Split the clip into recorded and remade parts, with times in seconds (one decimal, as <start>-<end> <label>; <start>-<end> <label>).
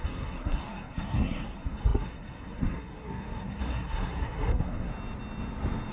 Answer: 0.0-4.9 remade; 4.9-5.9 recorded